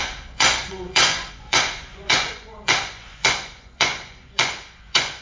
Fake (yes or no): yes